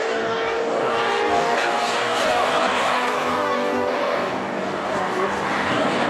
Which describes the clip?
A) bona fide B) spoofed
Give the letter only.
B